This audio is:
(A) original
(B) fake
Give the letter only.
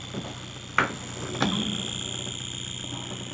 A